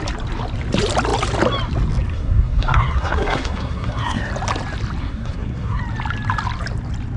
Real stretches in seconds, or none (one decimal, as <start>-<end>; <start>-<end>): 0.0-2.1; 4.3-5.0; 5.8-7.2